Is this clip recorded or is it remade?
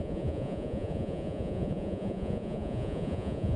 remade